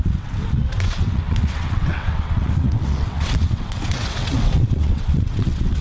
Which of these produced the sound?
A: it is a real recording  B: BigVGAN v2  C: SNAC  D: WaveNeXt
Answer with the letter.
D